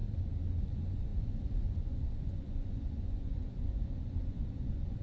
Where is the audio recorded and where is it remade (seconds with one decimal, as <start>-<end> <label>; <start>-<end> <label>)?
0.0-0.6 recorded; 0.6-5.0 remade